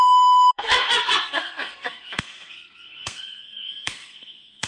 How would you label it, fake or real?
fake